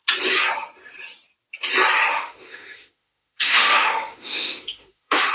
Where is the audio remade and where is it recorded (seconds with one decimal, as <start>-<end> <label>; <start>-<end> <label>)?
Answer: 0.0-2.1 recorded; 2.1-5.3 remade